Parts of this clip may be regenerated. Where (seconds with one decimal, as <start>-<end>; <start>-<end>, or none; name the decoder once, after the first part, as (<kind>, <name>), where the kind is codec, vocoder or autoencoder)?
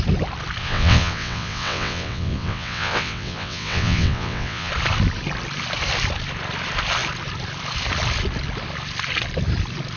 0.6-4.7 (vocoder, WaveNeXt)